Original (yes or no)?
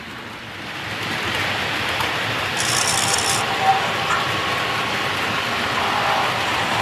no